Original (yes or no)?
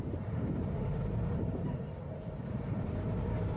no